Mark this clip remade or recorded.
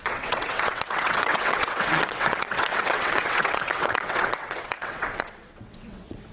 remade